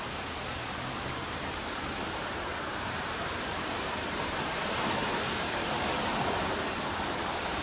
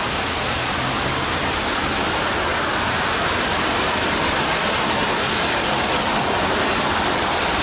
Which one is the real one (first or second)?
second